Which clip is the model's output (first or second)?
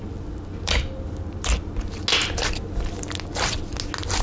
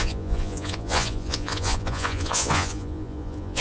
second